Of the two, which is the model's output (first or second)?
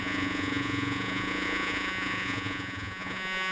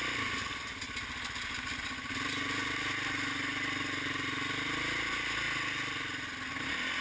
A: first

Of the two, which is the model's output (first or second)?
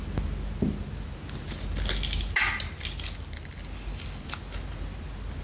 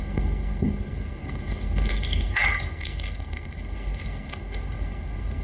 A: second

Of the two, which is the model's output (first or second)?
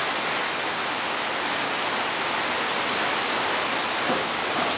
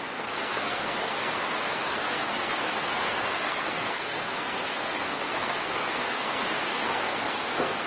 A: second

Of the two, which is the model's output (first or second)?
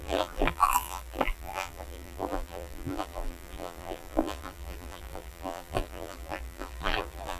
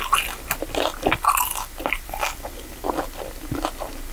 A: first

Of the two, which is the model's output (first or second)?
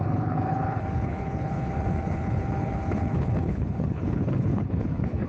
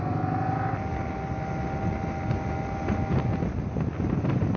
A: first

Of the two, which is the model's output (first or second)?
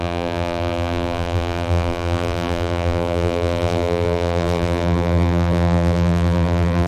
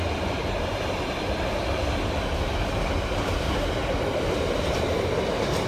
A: first